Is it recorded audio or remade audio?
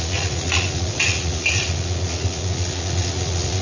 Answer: remade